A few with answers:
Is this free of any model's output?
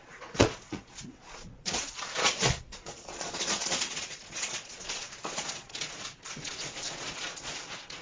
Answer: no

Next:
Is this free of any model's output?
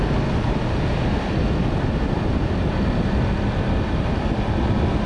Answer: yes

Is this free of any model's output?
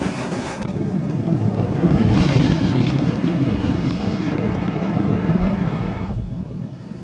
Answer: no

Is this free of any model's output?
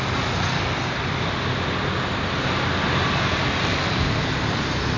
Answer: yes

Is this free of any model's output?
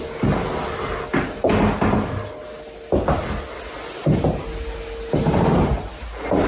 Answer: yes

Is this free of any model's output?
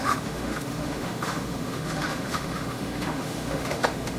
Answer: no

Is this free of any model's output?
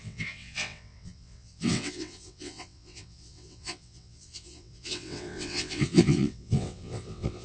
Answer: no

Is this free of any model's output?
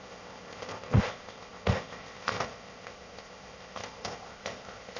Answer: no